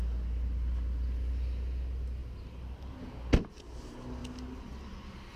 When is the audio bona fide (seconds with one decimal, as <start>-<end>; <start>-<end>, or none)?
0.0-5.4

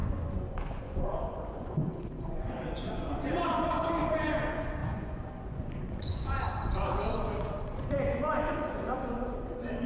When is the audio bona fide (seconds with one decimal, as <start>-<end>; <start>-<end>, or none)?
none